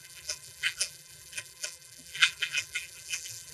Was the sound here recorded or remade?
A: remade